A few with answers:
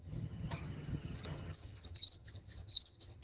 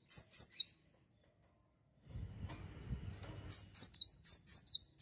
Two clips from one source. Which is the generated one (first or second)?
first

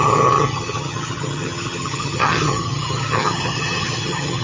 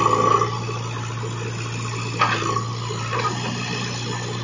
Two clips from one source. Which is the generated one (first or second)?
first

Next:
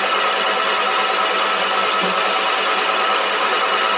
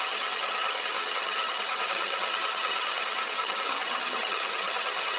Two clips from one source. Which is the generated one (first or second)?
second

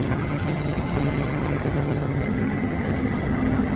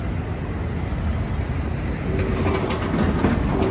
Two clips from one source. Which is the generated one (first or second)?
first